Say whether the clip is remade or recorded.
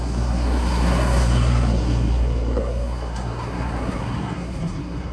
remade